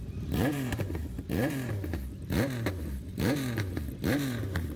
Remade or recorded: remade